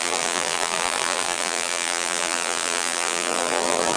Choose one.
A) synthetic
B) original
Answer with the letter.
A